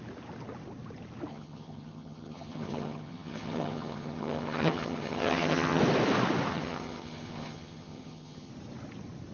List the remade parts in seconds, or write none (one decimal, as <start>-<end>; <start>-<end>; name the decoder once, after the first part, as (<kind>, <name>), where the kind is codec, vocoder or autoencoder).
1.3-5.8 (vocoder, HiFi-GAN); 6.5-8.5